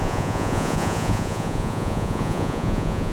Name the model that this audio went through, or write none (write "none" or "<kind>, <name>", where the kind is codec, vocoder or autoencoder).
vocoder, Vocos